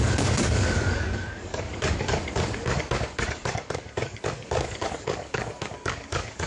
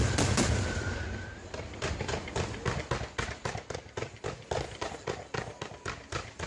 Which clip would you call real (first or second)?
second